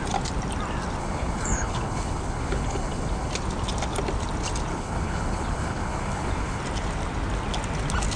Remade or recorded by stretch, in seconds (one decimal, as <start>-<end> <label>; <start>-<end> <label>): 0.0-1.0 recorded; 1.0-3.3 remade; 3.3-4.7 recorded; 4.7-6.6 remade; 6.6-8.2 recorded